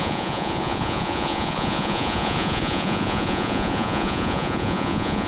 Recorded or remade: remade